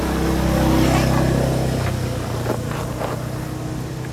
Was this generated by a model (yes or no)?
no